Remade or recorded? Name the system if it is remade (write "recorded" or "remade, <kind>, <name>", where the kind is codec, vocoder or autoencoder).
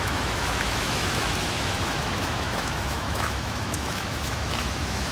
remade, autoencoder, DAC-VAE